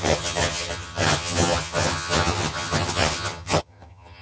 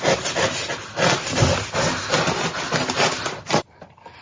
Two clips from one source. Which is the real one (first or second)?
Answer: second